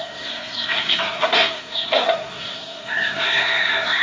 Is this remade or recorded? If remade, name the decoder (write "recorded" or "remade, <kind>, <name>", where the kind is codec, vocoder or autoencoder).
remade, codec, SNAC